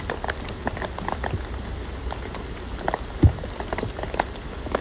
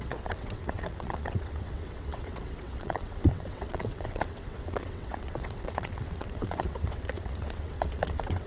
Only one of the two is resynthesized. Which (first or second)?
second